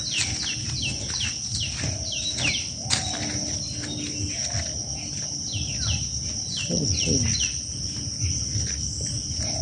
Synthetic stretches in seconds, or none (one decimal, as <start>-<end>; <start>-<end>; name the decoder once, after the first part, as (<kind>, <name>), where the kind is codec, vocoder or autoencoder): none